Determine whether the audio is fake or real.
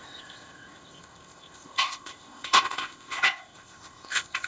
fake